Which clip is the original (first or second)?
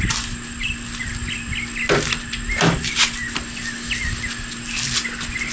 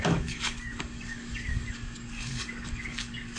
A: first